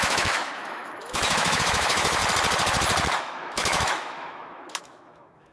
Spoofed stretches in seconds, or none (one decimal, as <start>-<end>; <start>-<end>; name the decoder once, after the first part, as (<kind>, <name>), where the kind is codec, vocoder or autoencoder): 0.0-2.2 (autoencoder, DAC-VAE); 3.2-5.5